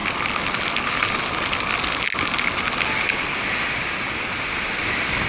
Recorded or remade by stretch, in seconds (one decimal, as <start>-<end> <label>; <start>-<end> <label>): 0.0-5.3 recorded